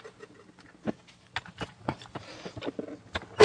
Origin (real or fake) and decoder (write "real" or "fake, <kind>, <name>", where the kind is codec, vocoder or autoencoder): real